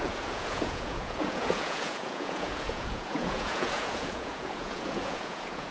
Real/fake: fake